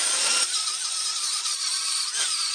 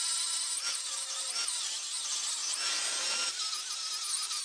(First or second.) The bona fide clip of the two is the second